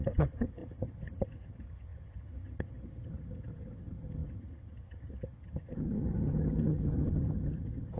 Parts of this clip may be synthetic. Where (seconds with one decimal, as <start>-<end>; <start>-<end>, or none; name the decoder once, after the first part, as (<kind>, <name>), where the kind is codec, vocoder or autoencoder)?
0.0-8.0 (vocoder, HiFi-GAN)